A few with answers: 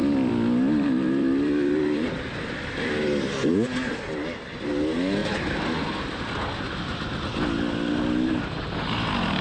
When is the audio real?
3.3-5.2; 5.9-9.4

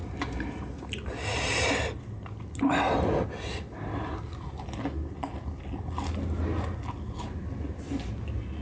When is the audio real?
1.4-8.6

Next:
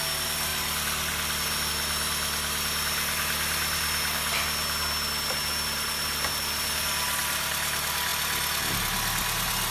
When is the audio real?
0.0-9.7